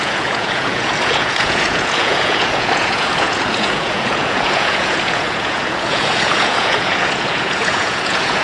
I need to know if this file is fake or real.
fake